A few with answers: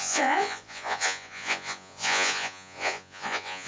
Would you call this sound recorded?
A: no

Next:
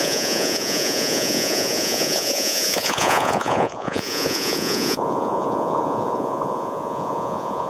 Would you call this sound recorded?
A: no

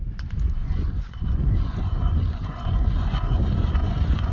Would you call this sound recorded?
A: no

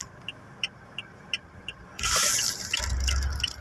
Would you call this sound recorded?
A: yes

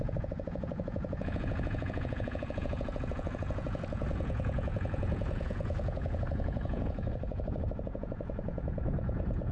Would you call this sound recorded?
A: no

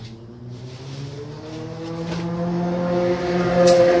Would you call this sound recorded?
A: yes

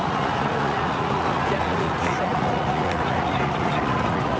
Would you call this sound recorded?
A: no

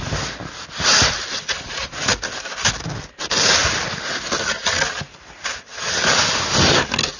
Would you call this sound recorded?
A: yes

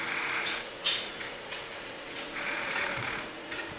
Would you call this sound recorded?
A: no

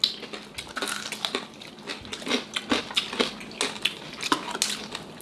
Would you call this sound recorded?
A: yes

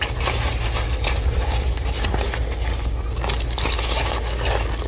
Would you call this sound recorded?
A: yes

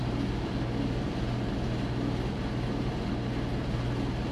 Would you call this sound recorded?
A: yes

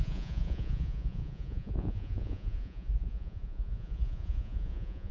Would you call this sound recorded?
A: no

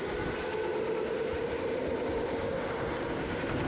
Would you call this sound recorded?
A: yes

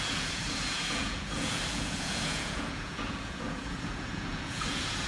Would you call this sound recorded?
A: no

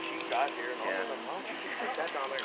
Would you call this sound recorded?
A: yes